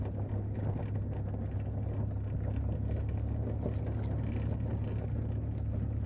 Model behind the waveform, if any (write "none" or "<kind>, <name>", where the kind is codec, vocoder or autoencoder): none